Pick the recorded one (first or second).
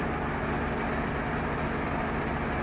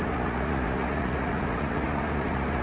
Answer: first